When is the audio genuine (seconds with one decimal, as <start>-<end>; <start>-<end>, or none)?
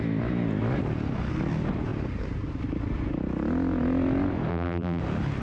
0.0-4.5; 5.0-5.4